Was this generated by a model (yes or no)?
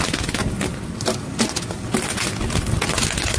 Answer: no